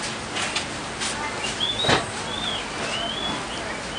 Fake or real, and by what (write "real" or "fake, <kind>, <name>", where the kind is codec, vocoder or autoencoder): real